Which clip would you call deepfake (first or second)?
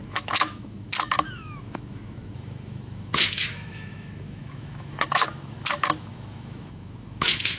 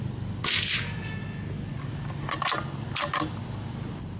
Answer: first